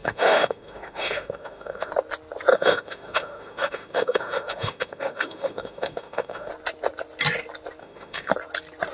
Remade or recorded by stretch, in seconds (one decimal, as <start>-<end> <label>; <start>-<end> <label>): 0.0-1.9 remade; 1.9-2.5 recorded; 2.5-6.5 remade; 6.5-7.8 recorded; 7.8-8.3 remade; 8.3-8.9 recorded